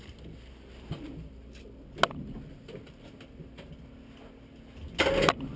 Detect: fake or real real